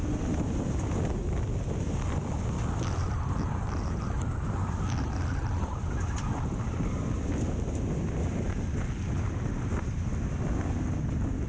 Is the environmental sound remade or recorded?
recorded